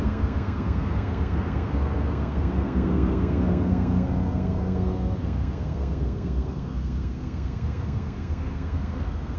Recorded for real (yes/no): no